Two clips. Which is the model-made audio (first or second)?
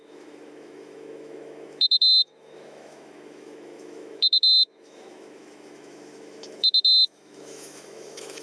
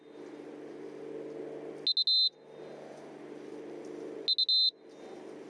first